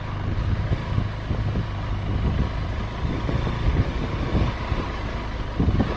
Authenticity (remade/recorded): recorded